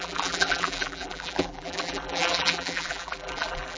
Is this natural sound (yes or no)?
no